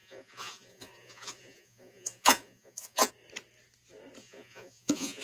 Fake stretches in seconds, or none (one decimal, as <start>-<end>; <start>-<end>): 0.0-3.1; 4.2-5.2